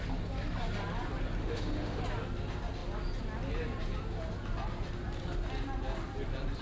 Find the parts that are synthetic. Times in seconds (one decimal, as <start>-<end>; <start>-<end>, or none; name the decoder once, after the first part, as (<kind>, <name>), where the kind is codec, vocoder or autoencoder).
1.4-2.0 (autoencoder, DAC-VAE)